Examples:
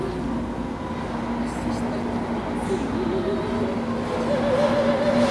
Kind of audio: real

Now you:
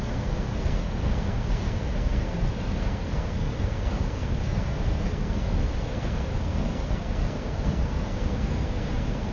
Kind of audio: fake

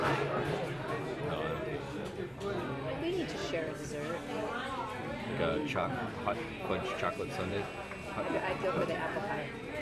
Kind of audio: real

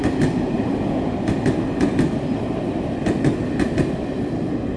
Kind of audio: real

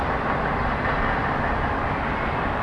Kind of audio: real